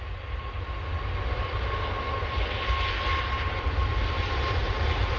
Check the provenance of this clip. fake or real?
real